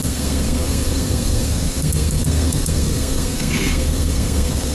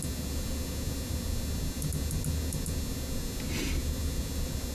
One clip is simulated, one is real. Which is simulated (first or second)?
first